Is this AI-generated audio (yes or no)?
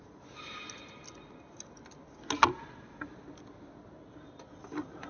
no